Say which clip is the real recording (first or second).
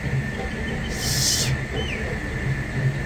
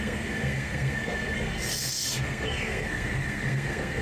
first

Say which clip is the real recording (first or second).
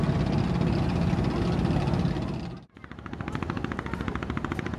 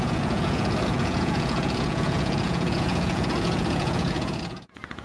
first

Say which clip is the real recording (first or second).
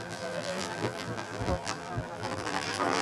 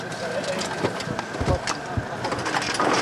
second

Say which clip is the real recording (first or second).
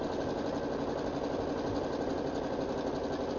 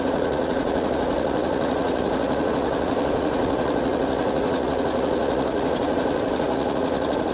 first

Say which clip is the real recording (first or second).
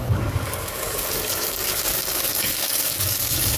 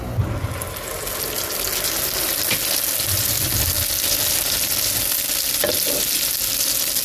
second